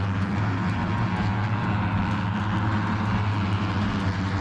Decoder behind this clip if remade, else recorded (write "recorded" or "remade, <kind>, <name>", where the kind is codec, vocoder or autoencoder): recorded